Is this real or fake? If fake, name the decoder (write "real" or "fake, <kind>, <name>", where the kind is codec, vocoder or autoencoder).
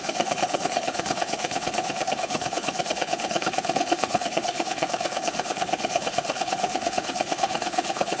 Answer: fake, codec, HILCodec